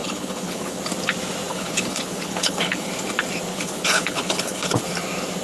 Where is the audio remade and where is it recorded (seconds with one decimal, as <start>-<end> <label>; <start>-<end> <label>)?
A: 0.0-0.8 remade; 0.8-1.5 recorded; 1.5-2.9 remade; 2.9-3.5 recorded; 3.5-4.8 remade; 4.8-5.4 recorded